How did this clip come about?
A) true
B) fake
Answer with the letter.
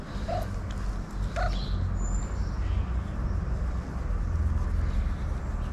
A